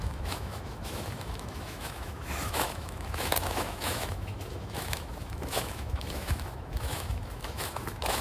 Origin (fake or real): fake